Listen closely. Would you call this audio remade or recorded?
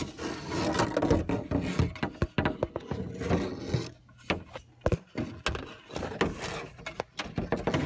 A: recorded